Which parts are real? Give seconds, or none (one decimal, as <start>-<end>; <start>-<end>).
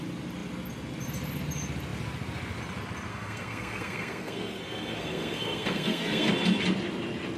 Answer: 0.0-3.1; 6.3-7.4